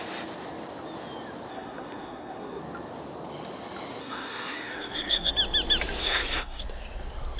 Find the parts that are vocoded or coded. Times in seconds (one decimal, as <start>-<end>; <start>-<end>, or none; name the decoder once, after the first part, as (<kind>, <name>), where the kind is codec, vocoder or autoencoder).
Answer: 1.5-2.6 (codec, SNAC); 4.0-5.3; 6.0-6.6